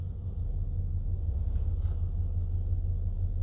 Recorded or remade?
recorded